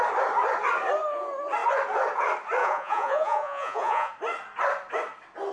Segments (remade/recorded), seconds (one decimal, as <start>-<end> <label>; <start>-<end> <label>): 0.0-2.6 recorded; 2.6-4.1 remade; 4.1-5.5 recorded